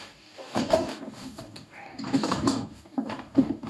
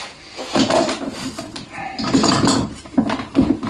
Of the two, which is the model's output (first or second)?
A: first